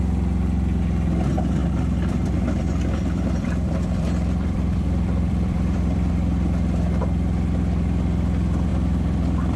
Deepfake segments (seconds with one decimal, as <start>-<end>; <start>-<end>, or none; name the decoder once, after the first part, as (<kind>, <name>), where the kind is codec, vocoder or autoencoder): 1.6-6.1 (vocoder, BigVGAN v2); 8.7-9.6